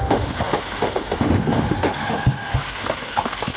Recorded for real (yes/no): no